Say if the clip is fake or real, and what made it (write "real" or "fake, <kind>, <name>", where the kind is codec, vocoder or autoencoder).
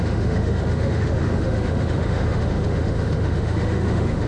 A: fake, autoencoder, DAC-VAE